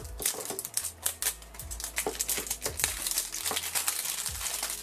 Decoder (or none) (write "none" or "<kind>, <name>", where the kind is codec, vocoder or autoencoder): none